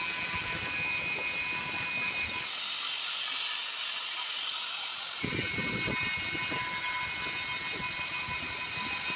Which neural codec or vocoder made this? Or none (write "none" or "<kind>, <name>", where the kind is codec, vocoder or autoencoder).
none